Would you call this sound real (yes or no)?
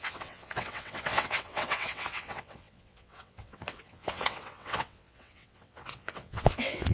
no